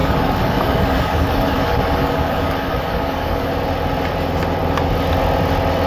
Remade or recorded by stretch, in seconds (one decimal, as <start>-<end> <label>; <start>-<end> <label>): 0.0-3.5 remade; 3.5-5.9 recorded